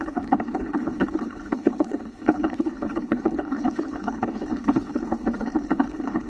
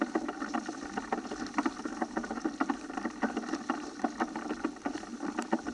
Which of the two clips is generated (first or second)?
first